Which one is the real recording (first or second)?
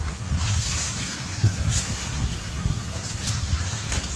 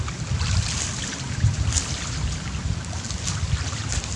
second